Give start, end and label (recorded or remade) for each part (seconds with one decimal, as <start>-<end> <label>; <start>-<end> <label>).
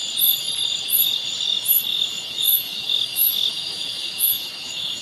0.0-1.9 recorded; 1.9-5.0 remade